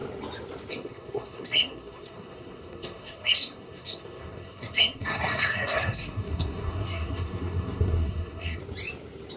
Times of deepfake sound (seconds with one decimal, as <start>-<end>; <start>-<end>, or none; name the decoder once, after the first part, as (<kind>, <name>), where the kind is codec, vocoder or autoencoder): 0.7-8.6 (codec, SNAC)